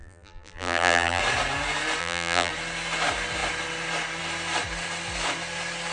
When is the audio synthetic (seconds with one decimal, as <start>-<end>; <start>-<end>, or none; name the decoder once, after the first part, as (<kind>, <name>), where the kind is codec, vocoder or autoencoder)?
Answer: 0.0-1.2 (vocoder, BigVGAN v2); 2.0-2.5